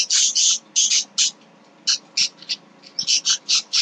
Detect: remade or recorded recorded